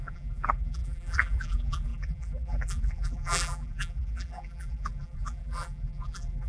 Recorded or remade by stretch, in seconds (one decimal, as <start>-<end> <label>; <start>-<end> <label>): 0.0-6.5 remade